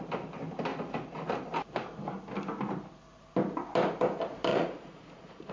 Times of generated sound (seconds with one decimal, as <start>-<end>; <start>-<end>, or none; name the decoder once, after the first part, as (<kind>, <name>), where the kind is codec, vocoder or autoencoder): 4.5-5.5 (vocoder, Vocos)